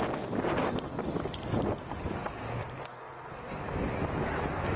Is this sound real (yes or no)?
yes